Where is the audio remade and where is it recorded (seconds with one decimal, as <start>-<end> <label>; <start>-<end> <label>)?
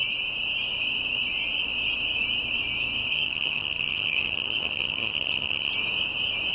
0.0-3.1 recorded; 3.1-5.7 remade; 5.7-6.5 recorded